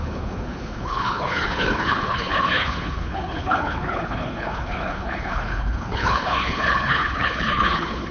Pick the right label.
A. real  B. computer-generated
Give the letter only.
B